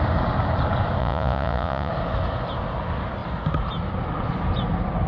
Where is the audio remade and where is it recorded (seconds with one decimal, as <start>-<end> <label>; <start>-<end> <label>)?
0.0-1.0 recorded; 1.0-1.9 remade; 1.9-5.1 recorded